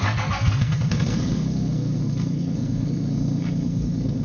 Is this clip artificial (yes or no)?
yes